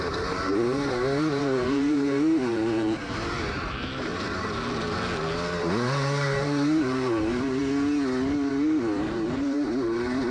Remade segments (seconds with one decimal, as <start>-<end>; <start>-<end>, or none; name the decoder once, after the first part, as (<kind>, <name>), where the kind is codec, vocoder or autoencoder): 0.0-4.1 (vocoder, BigVGAN v2); 5.6-7.6; 8.5-10.3

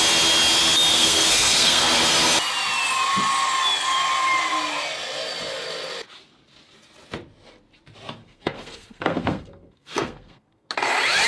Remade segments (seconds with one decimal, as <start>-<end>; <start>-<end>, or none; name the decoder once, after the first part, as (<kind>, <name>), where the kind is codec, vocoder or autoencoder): 0.9-1.8 (codec, SNAC); 8.2-10.7